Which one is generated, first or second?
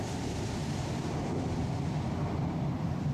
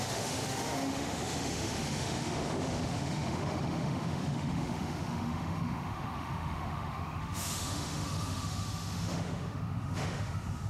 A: second